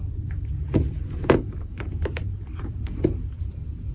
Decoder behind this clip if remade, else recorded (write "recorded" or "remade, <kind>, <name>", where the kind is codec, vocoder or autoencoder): remade, vocoder, BigVGAN v2